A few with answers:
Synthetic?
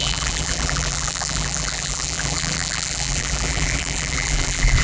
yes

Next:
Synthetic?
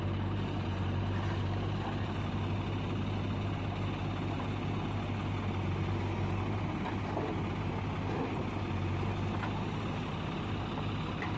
no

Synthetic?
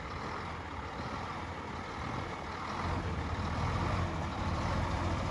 no